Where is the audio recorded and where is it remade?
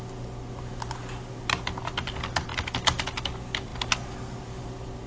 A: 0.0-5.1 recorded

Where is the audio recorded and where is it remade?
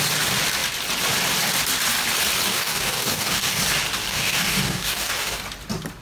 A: 0.0-2.5 recorded; 2.5-3.6 remade; 3.6-4.0 recorded; 4.0-5.4 remade; 5.4-6.0 recorded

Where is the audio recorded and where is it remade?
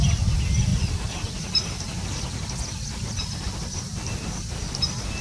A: 0.0-5.2 recorded